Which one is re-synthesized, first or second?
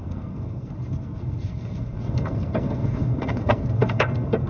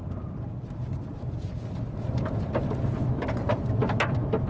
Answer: first